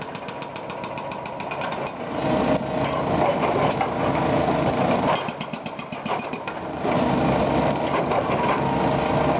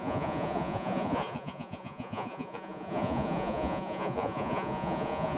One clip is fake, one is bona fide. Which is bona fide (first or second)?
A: first